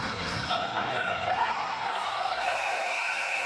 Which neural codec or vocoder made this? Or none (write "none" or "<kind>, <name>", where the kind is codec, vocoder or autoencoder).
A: codec, SNAC